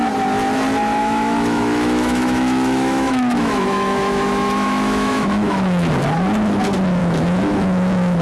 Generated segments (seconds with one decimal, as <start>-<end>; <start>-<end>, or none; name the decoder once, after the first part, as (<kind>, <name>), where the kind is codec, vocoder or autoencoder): 1.0-5.9 (autoencoder, DAC-VAE); 7.0-8.2